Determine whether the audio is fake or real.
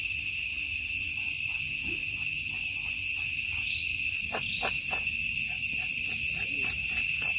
real